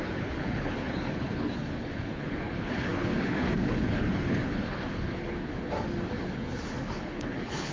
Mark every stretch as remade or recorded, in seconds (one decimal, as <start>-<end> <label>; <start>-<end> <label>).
0.0-5.5 remade; 5.5-6.2 recorded; 6.2-7.7 remade